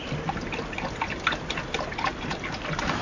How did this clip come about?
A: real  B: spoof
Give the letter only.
A